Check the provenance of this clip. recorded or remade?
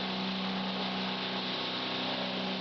recorded